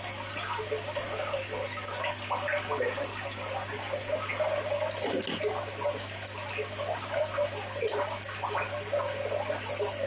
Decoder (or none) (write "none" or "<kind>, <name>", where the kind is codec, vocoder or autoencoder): none